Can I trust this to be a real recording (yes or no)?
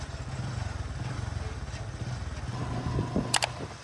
yes